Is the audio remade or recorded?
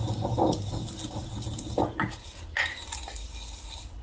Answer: recorded